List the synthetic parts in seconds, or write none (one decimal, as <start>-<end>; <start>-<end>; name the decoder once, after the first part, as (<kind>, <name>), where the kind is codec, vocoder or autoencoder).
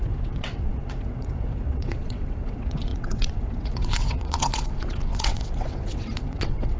0.0-6.8 (vocoder, WaveNeXt)